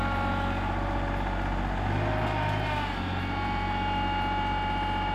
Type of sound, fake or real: real